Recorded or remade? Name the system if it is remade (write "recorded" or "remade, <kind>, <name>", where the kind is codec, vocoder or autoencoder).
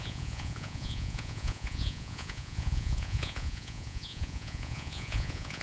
remade, vocoder, Vocos